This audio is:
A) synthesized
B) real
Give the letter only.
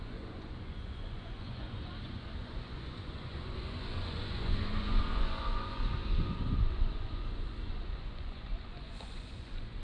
A